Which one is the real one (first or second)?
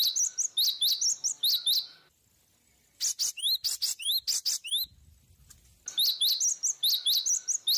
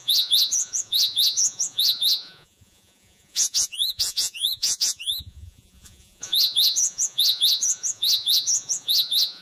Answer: first